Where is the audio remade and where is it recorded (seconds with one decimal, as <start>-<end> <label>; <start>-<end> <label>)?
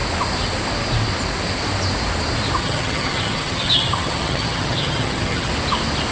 0.0-2.6 recorded; 2.6-5.5 remade; 5.5-6.1 recorded